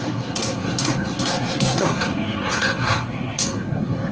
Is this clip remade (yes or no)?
yes